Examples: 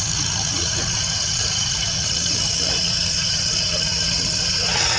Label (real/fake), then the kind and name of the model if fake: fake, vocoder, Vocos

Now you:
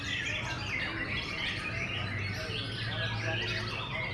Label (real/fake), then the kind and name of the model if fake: real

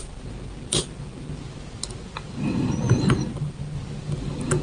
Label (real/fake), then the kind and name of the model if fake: real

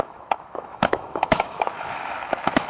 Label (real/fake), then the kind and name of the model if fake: fake, autoencoder, DAC-VAE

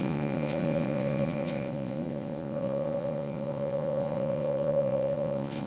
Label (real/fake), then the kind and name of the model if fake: fake, vocoder, WaveNeXt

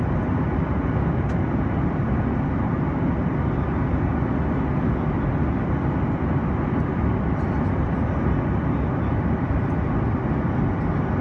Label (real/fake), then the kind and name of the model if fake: real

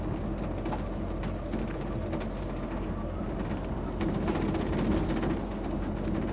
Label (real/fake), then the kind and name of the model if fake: real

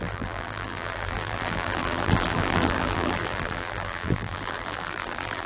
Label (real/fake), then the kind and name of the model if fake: fake, vocoder, BigVGAN v2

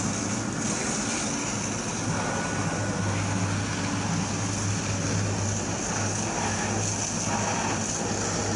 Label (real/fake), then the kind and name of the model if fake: real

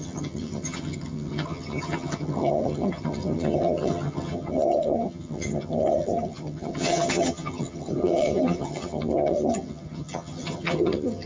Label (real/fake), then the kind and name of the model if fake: fake, vocoder, HiFi-GAN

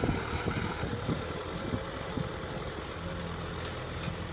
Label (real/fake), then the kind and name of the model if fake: real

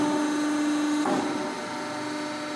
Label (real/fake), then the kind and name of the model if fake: real